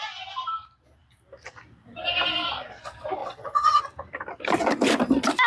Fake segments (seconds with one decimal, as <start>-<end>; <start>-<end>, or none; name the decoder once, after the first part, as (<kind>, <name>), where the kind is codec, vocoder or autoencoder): 3.2-3.8 (vocoder, WaveNeXt)